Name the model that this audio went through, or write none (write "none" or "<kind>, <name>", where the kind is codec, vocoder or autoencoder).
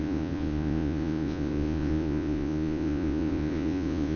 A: vocoder, Vocos